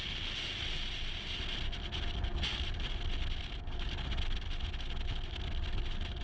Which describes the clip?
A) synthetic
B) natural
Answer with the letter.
B